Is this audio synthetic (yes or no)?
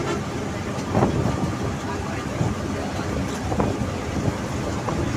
no